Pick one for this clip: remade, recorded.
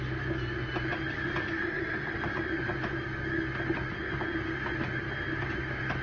recorded